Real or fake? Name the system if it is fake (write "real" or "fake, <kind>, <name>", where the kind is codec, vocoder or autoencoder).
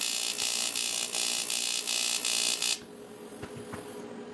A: real